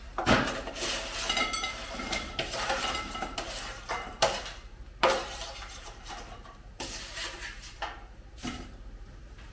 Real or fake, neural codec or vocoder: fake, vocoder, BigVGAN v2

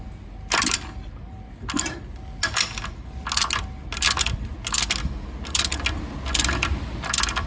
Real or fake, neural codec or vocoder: real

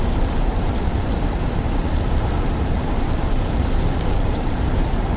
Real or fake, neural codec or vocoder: fake, vocoder, BigVGAN v2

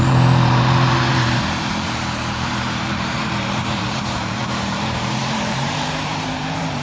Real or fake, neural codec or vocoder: fake, vocoder, BigVGAN v2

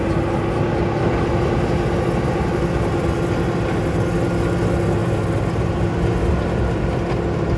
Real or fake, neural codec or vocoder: real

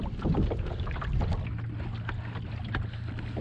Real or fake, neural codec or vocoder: real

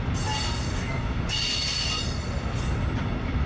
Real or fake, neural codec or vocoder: real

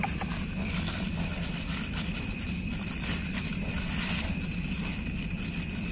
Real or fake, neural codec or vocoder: real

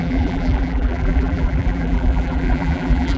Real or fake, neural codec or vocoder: fake, vocoder, BigVGAN v2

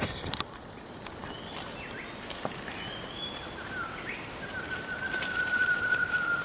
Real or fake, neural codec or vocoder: fake, vocoder, BigVGAN v2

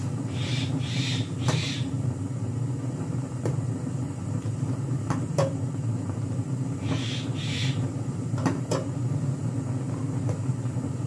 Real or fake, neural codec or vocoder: fake, vocoder, BigVGAN v2